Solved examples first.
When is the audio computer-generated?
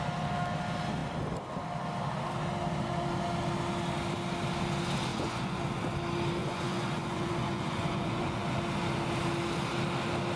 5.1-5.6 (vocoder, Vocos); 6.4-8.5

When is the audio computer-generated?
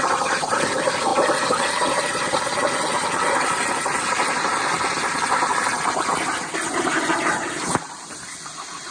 0.0-5.5 (vocoder, BigVGAN v2); 7.1-8.9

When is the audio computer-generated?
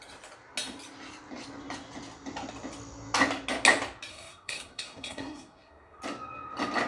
4.1-6.0 (codec, SNAC)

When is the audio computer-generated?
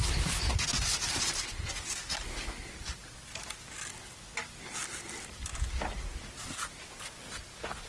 none